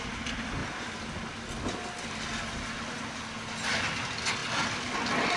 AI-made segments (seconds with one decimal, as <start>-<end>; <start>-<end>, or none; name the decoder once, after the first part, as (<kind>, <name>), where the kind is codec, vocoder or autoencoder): none